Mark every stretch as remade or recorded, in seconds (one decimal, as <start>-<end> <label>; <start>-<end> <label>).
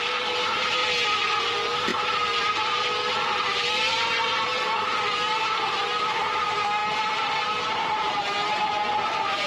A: 0.0-0.8 remade; 0.8-1.4 recorded; 1.4-9.5 remade